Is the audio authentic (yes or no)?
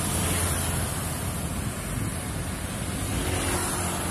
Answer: yes